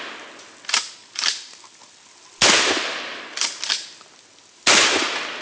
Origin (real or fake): real